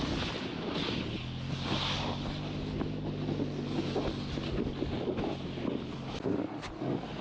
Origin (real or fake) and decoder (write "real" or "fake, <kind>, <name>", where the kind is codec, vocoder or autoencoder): real